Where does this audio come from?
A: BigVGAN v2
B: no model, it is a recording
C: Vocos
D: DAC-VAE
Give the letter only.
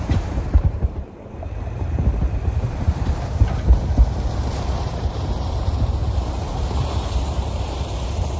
A